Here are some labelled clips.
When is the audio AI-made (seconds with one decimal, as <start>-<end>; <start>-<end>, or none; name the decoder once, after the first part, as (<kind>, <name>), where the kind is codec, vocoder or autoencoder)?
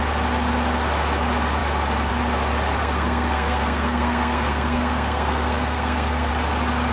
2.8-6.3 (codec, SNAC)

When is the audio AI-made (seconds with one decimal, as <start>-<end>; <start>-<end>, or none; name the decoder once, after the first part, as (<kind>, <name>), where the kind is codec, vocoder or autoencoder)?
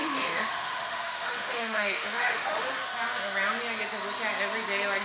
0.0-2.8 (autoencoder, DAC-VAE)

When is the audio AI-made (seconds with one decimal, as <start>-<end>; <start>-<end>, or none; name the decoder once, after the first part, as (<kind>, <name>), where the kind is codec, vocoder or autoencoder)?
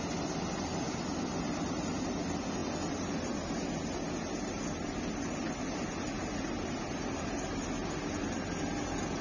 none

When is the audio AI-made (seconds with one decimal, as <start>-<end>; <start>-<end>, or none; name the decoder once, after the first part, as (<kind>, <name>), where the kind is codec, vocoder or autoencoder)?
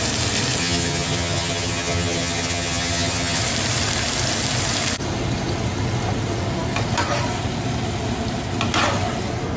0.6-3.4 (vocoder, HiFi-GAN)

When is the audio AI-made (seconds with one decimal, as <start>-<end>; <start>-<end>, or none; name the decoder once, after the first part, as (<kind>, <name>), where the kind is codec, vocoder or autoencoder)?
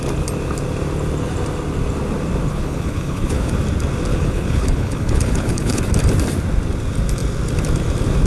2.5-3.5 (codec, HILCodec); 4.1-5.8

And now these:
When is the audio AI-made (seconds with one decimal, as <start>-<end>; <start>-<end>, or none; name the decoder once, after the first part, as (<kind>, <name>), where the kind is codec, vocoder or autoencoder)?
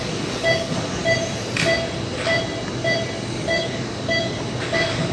0.0-1.0 (codec, DAC); 3.3-5.1